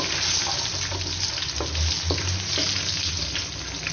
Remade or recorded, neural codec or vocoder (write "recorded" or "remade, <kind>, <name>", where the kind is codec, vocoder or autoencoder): recorded